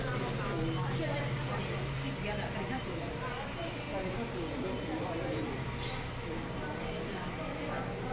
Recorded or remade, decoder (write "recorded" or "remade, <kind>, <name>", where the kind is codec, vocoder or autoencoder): recorded